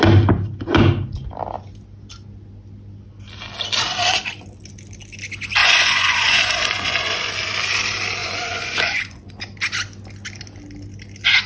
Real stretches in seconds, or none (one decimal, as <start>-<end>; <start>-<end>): 0.0-5.6; 7.3-8.2; 9.3-11.5